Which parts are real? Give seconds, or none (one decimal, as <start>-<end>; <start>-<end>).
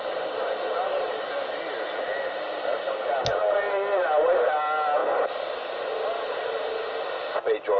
0.0-7.8